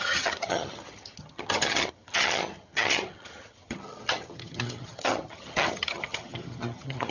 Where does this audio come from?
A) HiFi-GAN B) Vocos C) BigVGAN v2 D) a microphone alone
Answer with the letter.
A